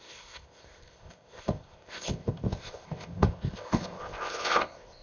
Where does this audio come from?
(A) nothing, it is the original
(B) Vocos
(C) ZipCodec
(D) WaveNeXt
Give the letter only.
C